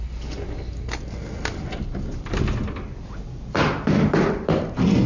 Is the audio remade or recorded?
recorded